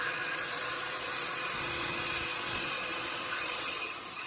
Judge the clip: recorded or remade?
remade